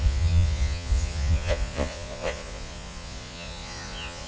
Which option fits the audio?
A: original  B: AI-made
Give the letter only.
B